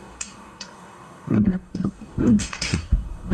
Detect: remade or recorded remade